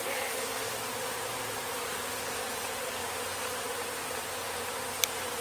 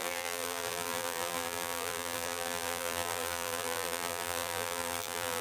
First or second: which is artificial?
second